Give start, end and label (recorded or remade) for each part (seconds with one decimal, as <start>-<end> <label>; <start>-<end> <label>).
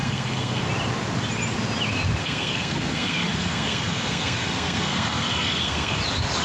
0.0-0.7 remade; 0.7-2.2 recorded; 2.2-6.0 remade; 6.0-6.4 recorded